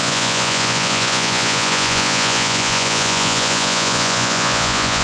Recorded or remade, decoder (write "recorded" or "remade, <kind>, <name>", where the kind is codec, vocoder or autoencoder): remade, vocoder, Vocos